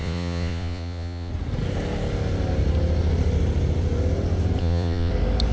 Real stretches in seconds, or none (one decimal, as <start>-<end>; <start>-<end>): 1.3-4.6; 5.1-5.5

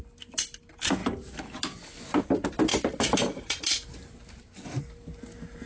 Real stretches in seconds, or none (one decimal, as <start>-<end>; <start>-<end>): 0.0-5.7

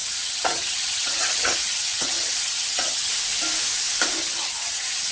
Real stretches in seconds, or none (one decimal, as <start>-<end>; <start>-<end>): 3.1-4.2

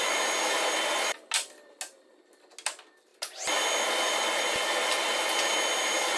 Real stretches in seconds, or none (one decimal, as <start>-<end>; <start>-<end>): 0.0-6.2